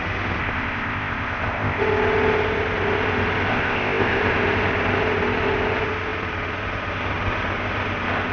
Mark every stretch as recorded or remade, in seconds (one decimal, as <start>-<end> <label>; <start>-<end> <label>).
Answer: 0.0-0.4 recorded; 0.4-1.8 remade; 1.8-3.5 recorded; 3.5-4.2 remade; 4.2-8.3 recorded